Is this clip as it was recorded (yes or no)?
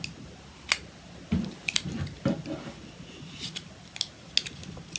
yes